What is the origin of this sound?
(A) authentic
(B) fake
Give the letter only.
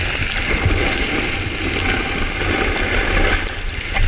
A